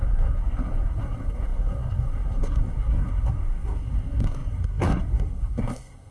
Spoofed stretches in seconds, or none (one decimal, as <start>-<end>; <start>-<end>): 0.0-6.1